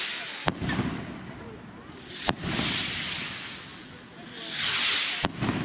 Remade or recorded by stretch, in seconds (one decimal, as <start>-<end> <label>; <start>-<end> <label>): 0.0-5.6 recorded